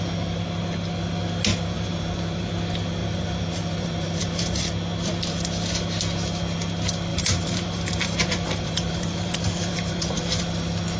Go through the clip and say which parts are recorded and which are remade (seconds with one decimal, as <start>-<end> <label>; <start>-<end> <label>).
0.0-1.5 recorded; 1.5-2.5 remade; 2.5-3.0 recorded; 3.0-4.7 remade; 4.7-7.1 recorded; 7.1-10.4 remade; 10.4-11.0 recorded